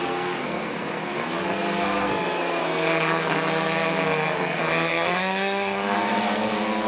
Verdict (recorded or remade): remade